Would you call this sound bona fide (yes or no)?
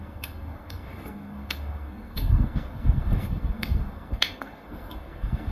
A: no